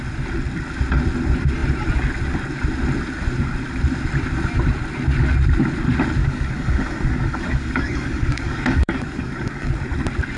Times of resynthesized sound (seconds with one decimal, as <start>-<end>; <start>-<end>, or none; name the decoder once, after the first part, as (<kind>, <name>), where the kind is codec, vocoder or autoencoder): 6.2-9.7 (codec, DAC)